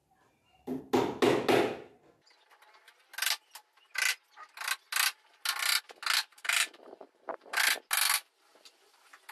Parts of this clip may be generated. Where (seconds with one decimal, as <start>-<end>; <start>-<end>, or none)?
0.0-0.8; 6.3-7.6